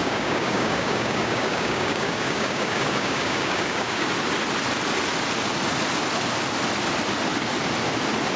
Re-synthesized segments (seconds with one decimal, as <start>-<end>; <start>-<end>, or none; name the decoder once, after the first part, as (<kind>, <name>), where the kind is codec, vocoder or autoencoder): 0.0-4.1 (codec, DAC)